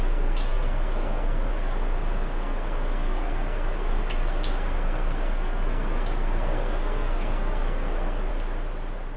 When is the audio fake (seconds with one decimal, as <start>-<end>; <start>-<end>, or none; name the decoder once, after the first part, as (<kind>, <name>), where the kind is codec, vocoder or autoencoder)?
0.0-8.3 (codec, SNAC)